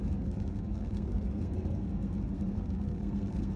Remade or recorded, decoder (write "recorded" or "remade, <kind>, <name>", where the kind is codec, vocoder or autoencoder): remade, codec, SNAC